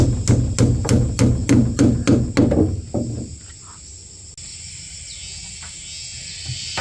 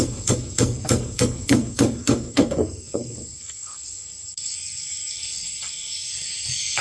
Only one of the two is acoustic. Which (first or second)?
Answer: first